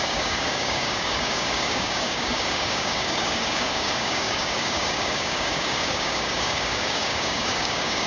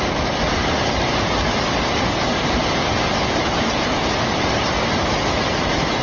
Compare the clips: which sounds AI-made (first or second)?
first